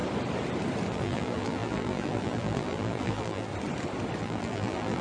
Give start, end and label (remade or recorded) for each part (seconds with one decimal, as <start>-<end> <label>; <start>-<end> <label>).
0.0-0.9 recorded; 0.9-3.5 remade; 3.5-4.2 recorded; 4.2-5.0 remade